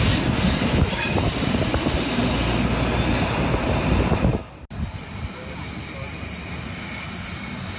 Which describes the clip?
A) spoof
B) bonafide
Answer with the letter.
B